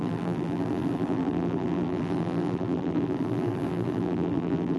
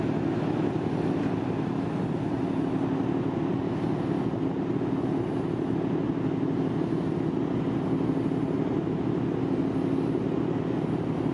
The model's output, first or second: first